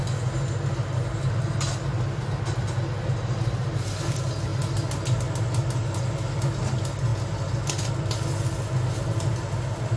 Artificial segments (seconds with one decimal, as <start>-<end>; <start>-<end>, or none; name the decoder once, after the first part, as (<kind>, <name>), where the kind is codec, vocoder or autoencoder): none